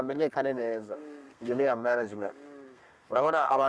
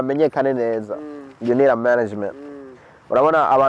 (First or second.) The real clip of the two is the second